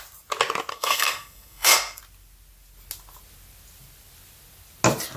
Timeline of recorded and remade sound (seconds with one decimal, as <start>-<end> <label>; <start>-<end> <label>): 0.0-0.7 recorded; 0.7-2.0 remade; 2.0-5.2 recorded